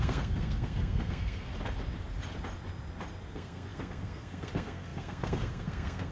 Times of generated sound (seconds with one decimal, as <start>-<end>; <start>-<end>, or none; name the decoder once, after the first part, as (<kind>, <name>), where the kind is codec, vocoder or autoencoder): 0.0-1.5 (codec, SNAC); 3.3-6.1